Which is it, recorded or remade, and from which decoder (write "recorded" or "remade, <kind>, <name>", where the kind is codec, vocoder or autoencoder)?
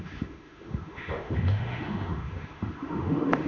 remade, autoencoder, DAC-VAE